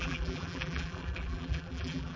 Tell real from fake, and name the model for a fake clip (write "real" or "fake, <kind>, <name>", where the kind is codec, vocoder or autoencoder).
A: fake, vocoder, BigVGAN v2